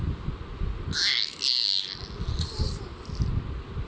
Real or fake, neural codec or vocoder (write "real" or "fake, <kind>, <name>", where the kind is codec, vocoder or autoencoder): real